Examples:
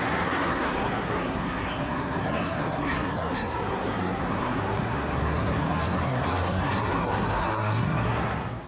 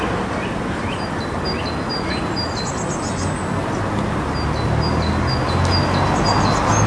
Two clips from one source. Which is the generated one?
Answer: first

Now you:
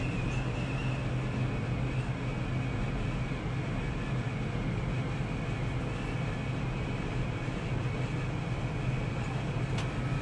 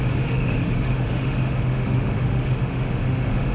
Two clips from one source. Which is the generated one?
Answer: second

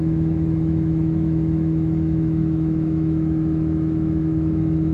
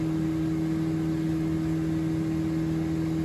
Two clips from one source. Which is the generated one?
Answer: first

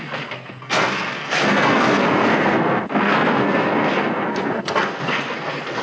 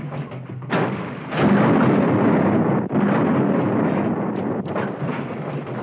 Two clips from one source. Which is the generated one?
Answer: first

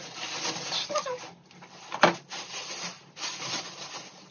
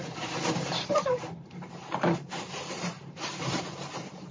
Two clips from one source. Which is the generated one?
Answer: second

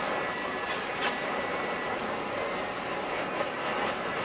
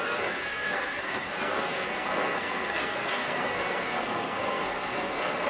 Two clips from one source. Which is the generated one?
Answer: second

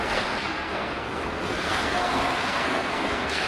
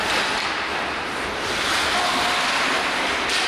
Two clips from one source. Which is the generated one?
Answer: first